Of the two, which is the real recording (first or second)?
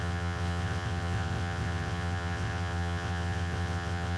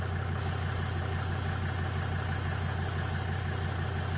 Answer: second